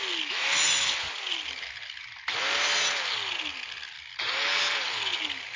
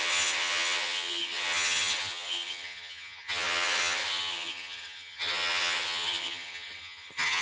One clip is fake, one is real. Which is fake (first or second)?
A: second